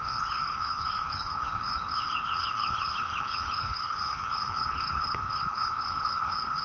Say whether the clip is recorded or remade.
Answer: remade